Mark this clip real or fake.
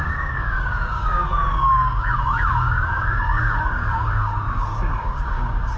fake